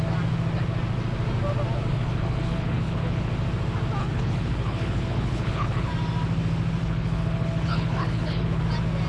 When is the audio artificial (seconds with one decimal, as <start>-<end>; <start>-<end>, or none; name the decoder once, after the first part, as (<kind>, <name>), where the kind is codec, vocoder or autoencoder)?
1.9-3.3 (codec, HILCodec); 4.0-5.9; 6.8-8.6